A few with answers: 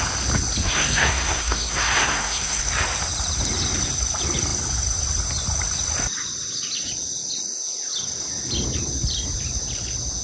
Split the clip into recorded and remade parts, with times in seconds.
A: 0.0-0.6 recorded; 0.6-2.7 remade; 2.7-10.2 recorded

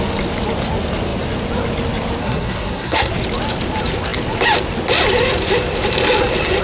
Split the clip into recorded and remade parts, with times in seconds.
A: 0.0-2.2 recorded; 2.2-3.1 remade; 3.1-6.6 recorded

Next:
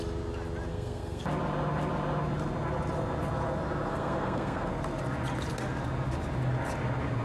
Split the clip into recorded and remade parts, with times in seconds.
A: 0.0-0.7 recorded; 0.7-1.2 remade; 1.2-3.9 recorded; 3.9-4.7 remade; 4.7-7.2 recorded

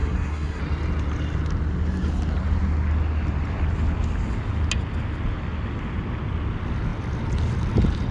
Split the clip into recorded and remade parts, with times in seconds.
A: 0.0-0.6 remade; 0.6-8.1 recorded

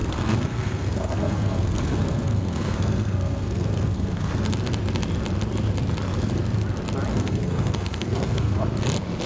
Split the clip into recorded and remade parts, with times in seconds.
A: 0.0-4.3 remade; 4.3-7.1 recorded; 7.1-8.6 remade; 8.6-9.3 recorded

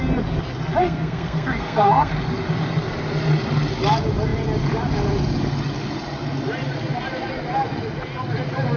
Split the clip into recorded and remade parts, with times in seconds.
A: 0.0-0.8 recorded; 0.8-2.1 remade; 2.1-8.8 recorded